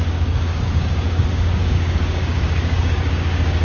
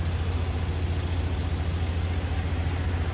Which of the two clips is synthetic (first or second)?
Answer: first